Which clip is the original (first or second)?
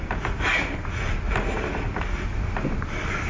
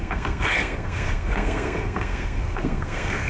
first